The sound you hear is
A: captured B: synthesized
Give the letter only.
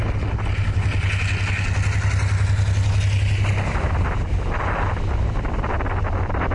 A